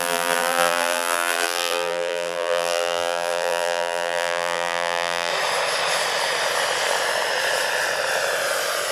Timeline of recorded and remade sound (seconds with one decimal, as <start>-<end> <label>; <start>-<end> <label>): 0.0-5.3 remade; 5.3-8.9 recorded